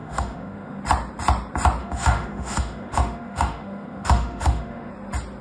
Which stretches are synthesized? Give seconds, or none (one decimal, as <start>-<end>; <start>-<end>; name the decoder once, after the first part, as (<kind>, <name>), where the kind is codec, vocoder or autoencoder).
0.0-0.8 (autoencoder, DAC-VAE); 1.8-4.9